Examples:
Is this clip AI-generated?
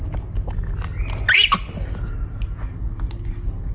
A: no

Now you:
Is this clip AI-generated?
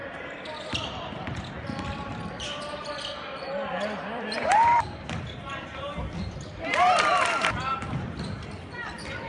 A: yes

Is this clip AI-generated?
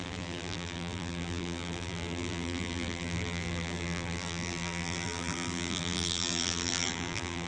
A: yes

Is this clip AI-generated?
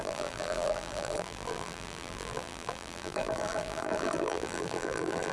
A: yes